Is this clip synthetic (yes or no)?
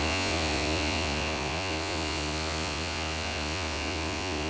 yes